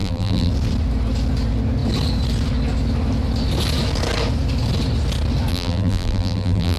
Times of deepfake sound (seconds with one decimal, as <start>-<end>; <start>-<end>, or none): 0.0-0.5; 5.5-6.8